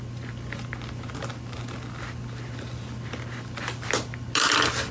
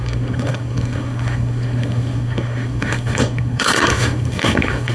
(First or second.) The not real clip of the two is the second